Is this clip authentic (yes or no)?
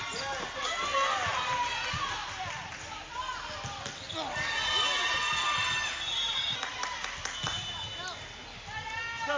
yes